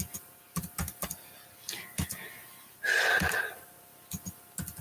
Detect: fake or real real